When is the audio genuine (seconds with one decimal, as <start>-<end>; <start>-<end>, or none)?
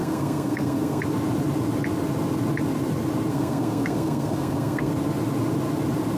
1.0-3.3; 4.9-6.2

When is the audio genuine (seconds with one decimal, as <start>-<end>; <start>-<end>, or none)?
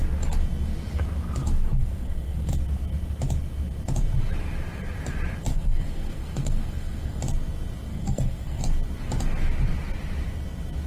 0.0-1.4; 2.5-5.5; 7.2-7.9; 8.6-10.9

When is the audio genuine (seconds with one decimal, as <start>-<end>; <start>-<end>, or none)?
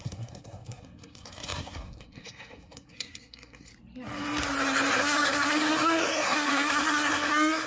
3.7-4.9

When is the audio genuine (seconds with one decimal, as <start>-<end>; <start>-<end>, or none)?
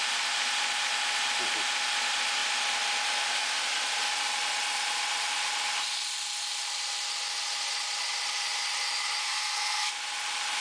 0.0-9.2; 9.9-10.6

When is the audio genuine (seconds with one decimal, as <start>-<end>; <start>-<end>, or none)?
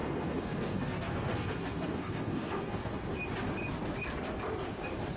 3.1-5.2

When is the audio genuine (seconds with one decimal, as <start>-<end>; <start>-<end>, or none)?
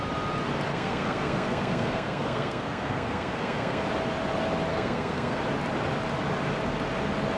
0.0-0.7; 3.8-4.7; 5.4-7.4